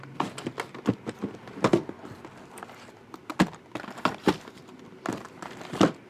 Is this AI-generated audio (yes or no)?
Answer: no